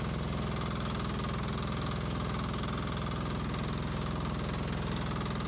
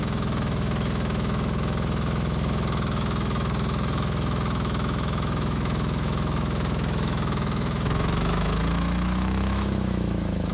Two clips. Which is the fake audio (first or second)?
second